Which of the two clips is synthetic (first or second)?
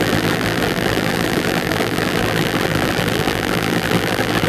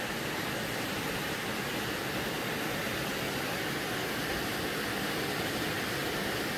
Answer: first